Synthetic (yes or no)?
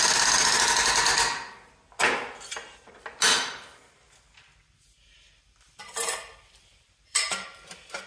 no